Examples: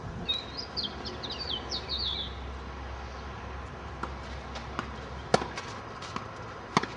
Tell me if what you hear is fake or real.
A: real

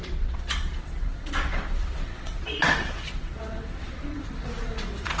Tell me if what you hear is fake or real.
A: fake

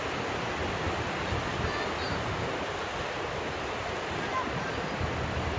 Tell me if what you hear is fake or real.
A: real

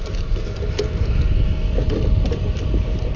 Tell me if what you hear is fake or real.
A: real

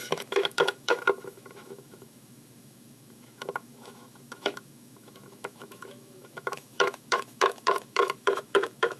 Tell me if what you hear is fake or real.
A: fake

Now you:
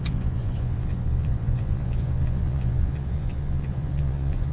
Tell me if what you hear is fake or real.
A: fake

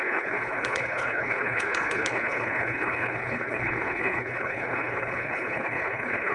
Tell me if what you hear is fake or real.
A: fake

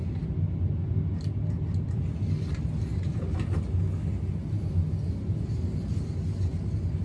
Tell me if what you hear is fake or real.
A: real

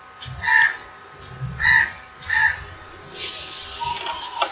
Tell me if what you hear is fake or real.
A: real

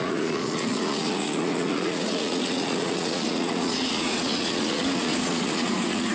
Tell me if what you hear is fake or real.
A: fake